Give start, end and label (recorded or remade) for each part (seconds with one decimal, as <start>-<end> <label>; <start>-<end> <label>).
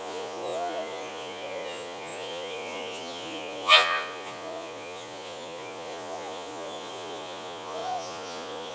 0.0-8.7 remade